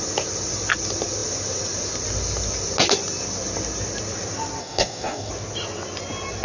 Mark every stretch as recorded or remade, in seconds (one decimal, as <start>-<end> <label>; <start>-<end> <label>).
0.0-4.6 recorded; 4.6-5.3 remade; 5.3-6.4 recorded